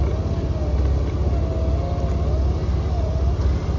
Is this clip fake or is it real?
real